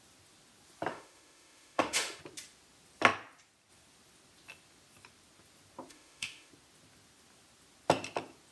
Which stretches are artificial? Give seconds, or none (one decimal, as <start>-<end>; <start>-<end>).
0.9-2.2; 5.9-6.5